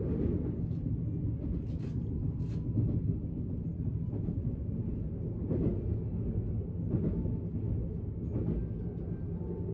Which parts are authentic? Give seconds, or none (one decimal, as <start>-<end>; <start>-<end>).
0.0-9.7